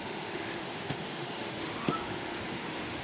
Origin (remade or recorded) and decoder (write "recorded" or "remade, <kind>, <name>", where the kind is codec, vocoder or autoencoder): remade, autoencoder, DAC-VAE